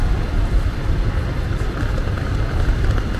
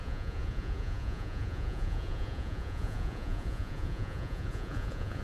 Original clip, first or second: first